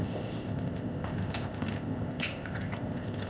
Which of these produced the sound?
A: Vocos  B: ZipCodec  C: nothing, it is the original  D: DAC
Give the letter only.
B